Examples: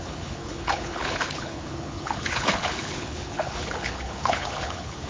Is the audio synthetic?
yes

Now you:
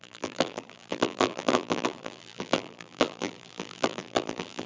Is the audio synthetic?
yes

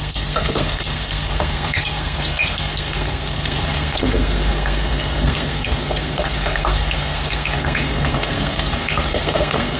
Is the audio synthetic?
yes